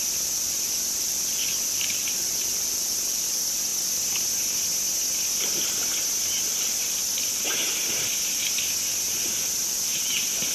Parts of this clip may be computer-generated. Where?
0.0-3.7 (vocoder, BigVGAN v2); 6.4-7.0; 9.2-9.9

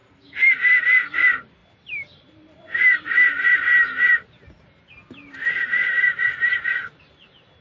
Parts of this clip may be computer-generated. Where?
0.0-0.8 (vocoder, BigVGAN v2); 1.6-3.6; 6.1-7.0

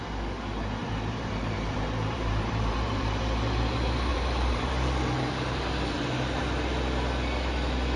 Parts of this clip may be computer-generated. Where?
0.8-3.2 (vocoder, BigVGAN v2); 4.1-6.4

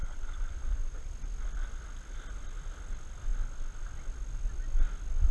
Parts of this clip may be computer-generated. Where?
0.0-1.1 (vocoder, BigVGAN v2)

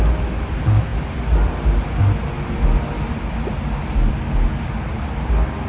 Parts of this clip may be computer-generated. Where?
none

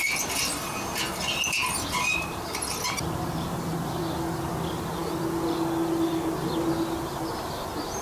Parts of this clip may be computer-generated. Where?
none

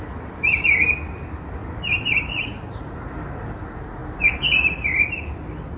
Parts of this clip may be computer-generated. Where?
1.6-3.1 (vocoder, BigVGAN v2)

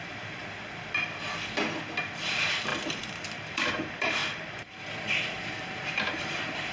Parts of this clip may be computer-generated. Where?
0.0-0.4 (vocoder, BigVGAN v2); 2.0-6.7